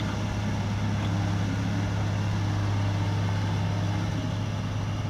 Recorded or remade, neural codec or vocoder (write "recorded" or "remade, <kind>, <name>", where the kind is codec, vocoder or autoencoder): recorded